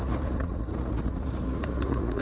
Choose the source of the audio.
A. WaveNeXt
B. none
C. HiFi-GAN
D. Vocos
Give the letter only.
D